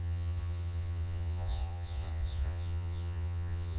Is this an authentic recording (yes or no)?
no